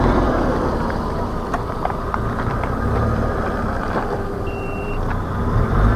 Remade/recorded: remade